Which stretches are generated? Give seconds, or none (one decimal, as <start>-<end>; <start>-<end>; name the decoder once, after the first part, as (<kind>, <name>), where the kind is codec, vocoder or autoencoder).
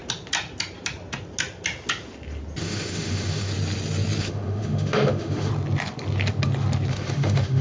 2.6-3.5 (autoencoder, DAC-VAE); 4.2-5.5; 6.9-7.6